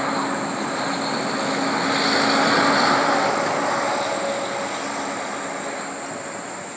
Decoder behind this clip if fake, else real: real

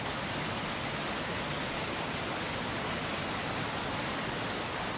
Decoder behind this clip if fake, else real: real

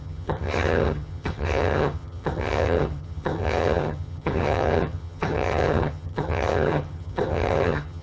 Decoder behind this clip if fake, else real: fake, vocoder, HiFi-GAN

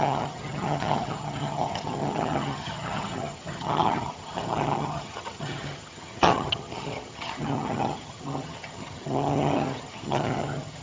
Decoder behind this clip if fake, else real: fake, vocoder, HiFi-GAN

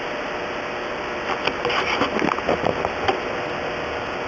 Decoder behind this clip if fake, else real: real